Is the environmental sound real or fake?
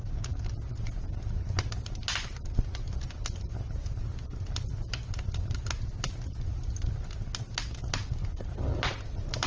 real